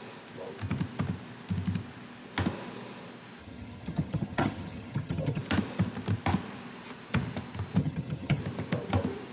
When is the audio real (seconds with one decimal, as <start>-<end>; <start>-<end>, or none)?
0.0-3.4; 5.4-7.8; 8.4-9.3